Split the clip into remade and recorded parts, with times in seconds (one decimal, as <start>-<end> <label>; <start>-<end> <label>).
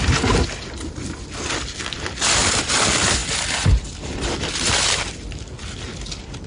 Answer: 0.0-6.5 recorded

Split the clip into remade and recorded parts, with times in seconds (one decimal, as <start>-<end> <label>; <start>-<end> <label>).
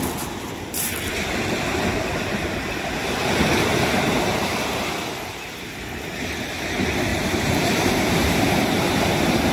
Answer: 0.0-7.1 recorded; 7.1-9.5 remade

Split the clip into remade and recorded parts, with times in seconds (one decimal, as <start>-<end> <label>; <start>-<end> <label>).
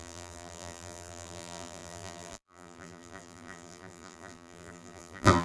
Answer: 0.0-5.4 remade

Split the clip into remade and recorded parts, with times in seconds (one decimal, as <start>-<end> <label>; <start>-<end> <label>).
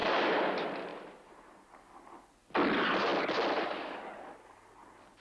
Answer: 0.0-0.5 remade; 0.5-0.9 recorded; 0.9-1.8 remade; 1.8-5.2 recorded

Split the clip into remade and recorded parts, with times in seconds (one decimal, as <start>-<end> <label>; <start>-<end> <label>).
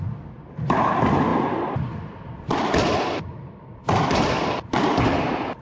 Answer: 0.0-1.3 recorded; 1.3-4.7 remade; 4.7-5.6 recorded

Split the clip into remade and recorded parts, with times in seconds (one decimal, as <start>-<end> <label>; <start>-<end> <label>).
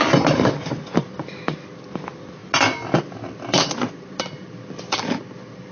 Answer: 0.0-2.4 remade; 2.4-3.0 recorded; 3.0-5.7 remade